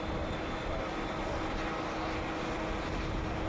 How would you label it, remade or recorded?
recorded